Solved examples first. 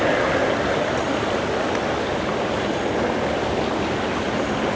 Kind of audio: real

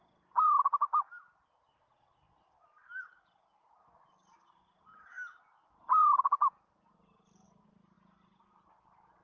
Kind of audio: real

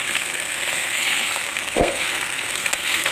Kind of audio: fake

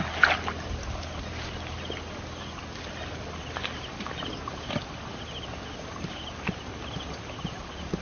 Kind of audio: real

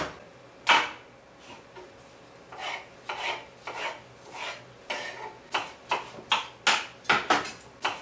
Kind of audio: real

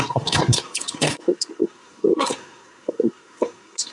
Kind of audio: fake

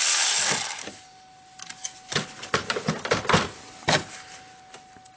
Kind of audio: real